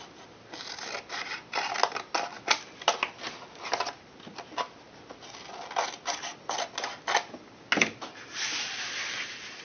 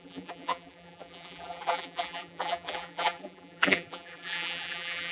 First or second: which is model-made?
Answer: second